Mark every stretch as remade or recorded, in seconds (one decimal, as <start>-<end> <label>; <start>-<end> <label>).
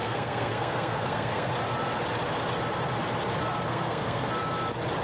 0.0-1.5 remade; 1.5-3.7 recorded; 3.7-4.3 remade; 4.3-5.0 recorded